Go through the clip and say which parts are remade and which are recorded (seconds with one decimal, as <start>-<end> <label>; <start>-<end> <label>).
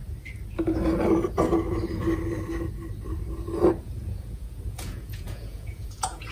0.0-3.8 recorded; 3.8-6.3 remade